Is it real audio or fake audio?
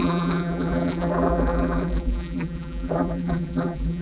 fake